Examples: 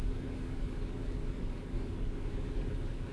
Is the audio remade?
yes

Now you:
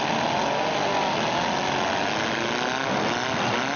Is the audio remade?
no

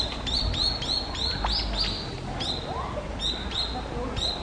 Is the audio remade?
no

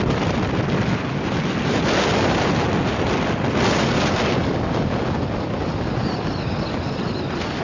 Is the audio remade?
no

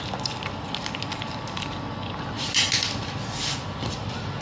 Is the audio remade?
no